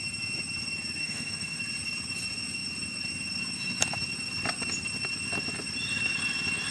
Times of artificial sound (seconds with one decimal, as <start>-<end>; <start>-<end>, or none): 1.0-1.6